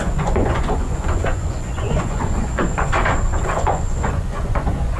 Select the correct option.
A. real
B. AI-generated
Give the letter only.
B